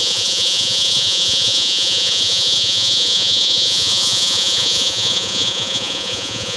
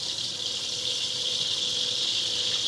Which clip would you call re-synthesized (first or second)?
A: first